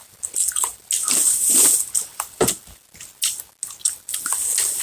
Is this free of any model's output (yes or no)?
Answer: yes